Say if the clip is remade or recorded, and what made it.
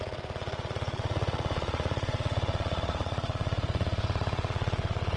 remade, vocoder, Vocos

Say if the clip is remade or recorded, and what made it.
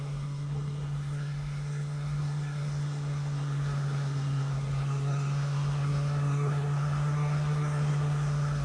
remade, codec, SNAC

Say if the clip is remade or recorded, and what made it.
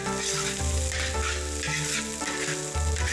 recorded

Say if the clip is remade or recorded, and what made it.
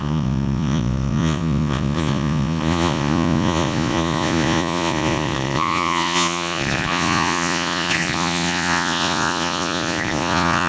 remade, vocoder, Vocos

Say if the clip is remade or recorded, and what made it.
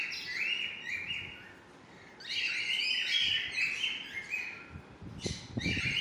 recorded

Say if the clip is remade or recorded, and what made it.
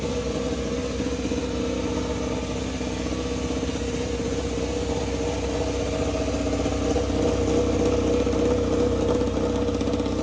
recorded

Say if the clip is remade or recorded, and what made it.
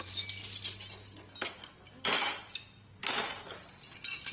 recorded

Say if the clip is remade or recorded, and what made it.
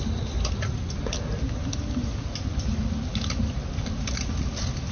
recorded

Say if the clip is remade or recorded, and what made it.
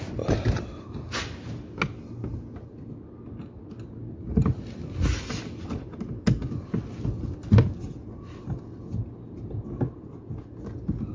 recorded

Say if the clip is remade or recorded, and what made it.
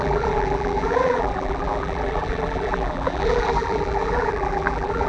remade, vocoder, BigVGAN v2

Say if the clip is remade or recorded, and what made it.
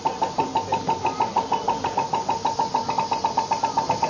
recorded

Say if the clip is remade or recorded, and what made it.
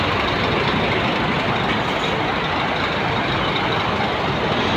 recorded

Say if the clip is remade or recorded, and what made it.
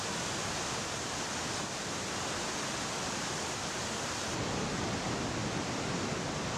recorded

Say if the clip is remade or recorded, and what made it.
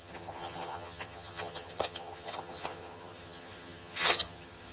remade, vocoder, HiFi-GAN